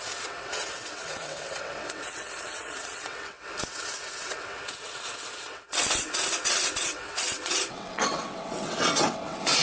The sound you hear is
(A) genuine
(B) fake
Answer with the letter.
B